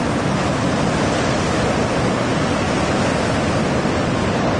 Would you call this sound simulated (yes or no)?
no